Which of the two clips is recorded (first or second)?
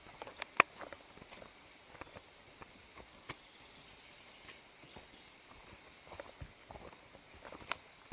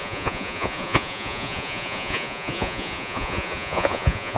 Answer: first